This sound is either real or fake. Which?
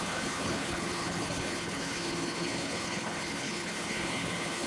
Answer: fake